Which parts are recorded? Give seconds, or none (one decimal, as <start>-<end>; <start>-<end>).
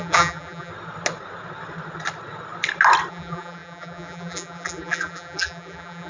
0.7-3.1